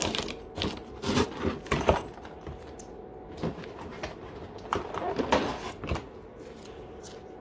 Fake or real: real